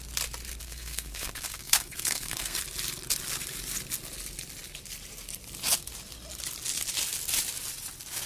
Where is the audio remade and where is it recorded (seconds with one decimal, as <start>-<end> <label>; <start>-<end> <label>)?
0.0-0.6 recorded; 0.6-2.6 remade; 2.6-8.3 recorded